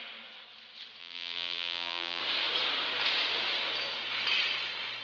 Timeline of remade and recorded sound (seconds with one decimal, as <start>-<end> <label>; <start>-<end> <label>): 0.0-1.0 recorded; 1.0-2.2 remade; 2.2-5.0 recorded